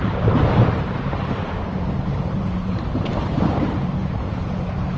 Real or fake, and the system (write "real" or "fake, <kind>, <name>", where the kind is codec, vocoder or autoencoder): fake, vocoder, BigVGAN v2